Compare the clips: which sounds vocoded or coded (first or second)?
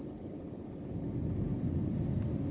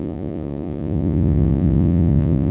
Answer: second